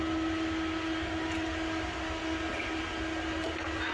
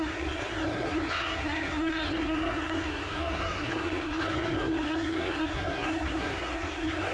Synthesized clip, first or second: second